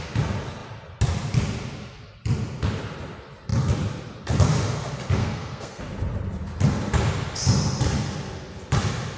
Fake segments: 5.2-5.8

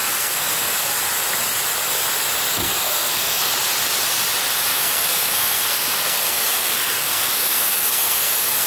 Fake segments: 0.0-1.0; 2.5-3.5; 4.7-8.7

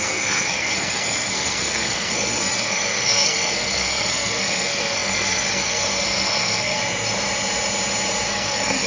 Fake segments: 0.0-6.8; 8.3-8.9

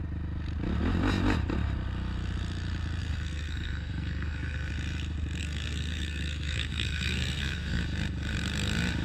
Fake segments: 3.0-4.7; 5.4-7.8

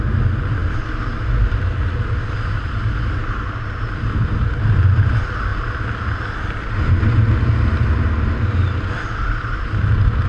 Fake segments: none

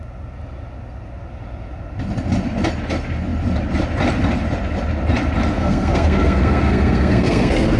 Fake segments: 5.5-7.8

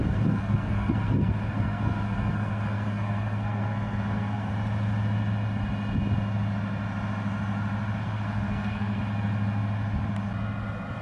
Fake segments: 0.0-4.5; 8.0-9.0